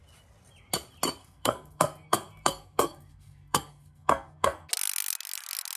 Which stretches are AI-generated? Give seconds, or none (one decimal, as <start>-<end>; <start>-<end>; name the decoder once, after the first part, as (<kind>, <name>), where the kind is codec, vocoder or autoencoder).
1.2-4.7 (codec, SNAC)